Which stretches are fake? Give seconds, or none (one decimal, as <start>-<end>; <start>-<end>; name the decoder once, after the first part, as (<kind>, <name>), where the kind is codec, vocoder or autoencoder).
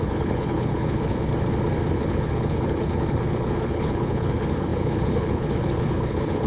0.0-1.3 (codec, HILCodec); 1.9-6.5